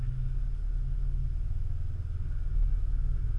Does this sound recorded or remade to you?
recorded